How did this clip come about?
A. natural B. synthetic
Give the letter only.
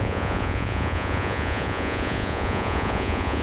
B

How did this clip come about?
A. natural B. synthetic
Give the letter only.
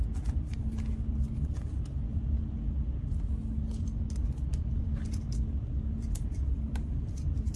A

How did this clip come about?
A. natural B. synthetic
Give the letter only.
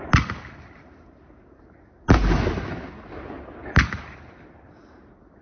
A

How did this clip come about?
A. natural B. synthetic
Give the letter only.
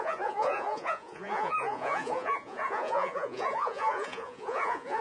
B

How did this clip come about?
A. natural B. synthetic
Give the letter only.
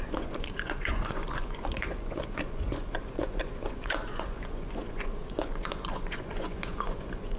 B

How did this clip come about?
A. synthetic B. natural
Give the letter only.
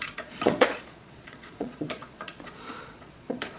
A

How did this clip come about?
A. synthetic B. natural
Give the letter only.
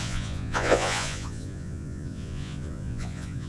A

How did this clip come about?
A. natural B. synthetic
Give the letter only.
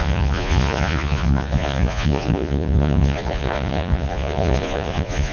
B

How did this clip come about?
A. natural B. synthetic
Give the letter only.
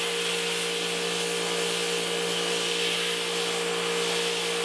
A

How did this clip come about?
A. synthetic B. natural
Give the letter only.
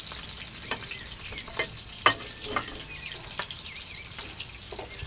B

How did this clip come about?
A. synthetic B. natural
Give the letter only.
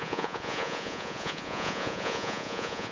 A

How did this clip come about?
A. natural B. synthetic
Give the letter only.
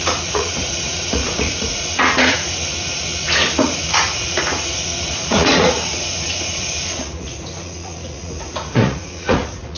B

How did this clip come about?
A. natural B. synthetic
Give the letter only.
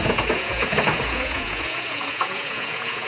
B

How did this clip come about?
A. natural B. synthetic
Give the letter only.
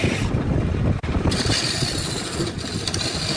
A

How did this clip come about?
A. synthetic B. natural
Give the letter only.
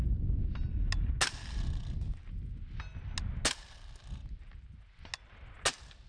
B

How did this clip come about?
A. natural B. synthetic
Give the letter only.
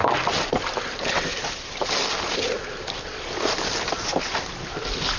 A